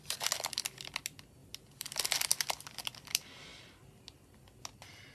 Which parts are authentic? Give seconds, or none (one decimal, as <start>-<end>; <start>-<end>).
0.0-5.1

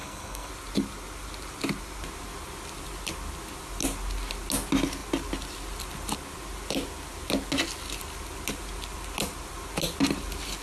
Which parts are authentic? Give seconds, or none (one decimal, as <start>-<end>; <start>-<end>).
0.5-10.6

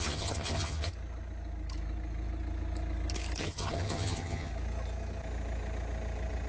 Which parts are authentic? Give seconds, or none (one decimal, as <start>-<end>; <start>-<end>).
0.9-3.4; 4.5-6.5

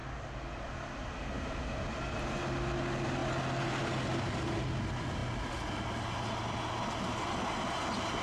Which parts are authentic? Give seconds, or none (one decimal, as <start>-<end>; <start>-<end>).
0.0-8.2

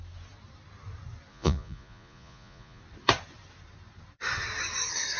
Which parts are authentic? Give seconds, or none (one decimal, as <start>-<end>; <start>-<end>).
0.0-1.3; 2.8-5.2

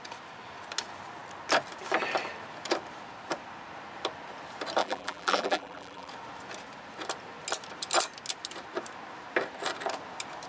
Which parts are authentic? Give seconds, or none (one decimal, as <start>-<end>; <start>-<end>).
0.0-4.8; 6.1-10.5